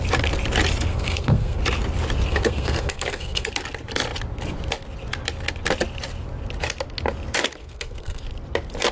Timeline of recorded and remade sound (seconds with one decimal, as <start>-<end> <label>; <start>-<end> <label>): 0.0-0.9 recorded; 0.9-1.6 remade; 1.6-2.3 recorded; 2.3-3.5 remade; 3.5-7.6 recorded; 7.6-8.2 remade; 8.2-8.9 recorded